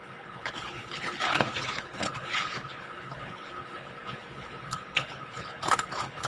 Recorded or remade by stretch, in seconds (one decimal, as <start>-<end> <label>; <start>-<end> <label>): 0.0-6.3 remade